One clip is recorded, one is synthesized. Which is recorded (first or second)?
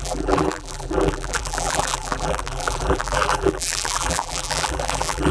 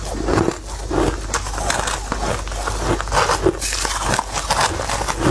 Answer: second